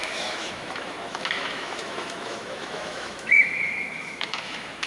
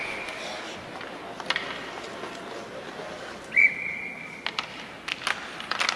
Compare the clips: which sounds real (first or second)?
second